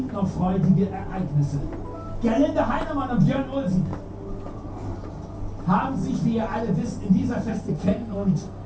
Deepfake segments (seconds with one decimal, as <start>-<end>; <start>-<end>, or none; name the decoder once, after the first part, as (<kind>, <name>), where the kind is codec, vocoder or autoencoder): 7.5-8.7 (codec, SNAC)

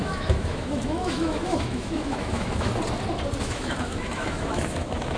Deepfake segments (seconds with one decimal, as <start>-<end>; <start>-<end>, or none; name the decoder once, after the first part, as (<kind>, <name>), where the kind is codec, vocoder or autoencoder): 0.0-2.7 (autoencoder, DAC-VAE); 3.4-5.2

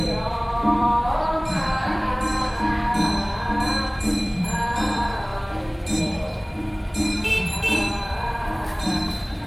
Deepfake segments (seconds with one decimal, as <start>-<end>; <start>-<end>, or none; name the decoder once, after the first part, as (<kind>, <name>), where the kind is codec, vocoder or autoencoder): 0.0-2.3 (vocoder, BigVGAN v2); 3.9-5.3; 6.0-9.5

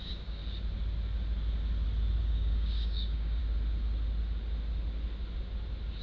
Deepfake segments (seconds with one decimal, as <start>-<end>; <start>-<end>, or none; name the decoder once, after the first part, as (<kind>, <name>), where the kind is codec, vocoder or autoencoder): 0.0-0.4 (codec, DAC); 2.2-3.4